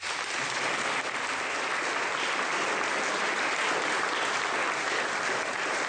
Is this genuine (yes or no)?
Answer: yes